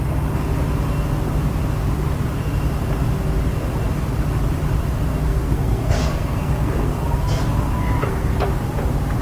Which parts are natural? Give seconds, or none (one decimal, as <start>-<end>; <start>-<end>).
0.0-5.1; 8.3-9.2